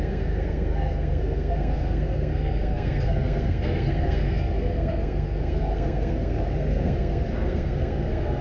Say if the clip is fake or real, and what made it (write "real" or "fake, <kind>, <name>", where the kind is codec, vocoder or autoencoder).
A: fake, codec, SNAC